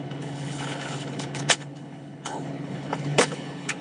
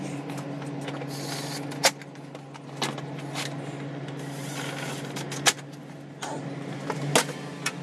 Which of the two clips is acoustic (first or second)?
second